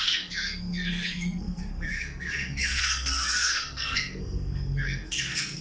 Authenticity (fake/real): fake